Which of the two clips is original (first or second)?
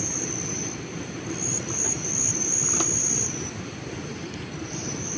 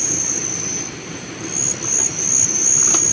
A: second